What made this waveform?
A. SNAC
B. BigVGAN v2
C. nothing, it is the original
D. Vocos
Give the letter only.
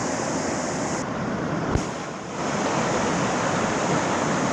C